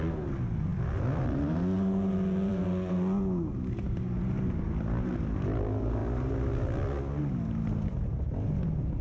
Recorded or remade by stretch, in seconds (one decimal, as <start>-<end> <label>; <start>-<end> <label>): 0.0-9.0 recorded